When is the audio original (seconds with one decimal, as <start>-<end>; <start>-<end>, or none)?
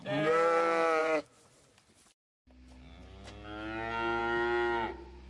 0.0-1.0; 1.5-5.3